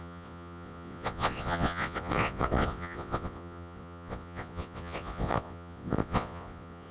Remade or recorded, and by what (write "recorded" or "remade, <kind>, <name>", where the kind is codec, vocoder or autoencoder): remade, vocoder, Vocos